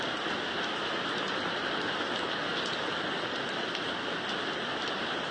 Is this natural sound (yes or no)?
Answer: yes